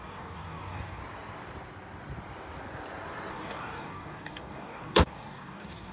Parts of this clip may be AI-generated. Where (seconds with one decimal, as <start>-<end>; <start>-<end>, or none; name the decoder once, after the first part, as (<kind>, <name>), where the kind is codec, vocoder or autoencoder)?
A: 0.0-1.0 (codec, DAC); 3.3-5.9